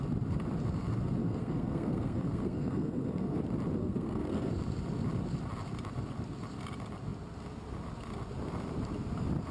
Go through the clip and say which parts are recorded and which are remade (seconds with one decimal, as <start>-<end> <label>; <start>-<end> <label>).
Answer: 0.0-1.2 recorded; 1.2-3.4 remade; 3.4-3.8 recorded; 3.8-4.5 remade; 4.5-9.5 recorded